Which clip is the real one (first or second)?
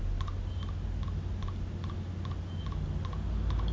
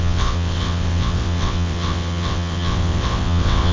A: first